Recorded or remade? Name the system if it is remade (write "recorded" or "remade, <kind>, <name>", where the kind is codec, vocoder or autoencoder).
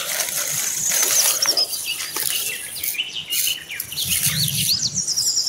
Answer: recorded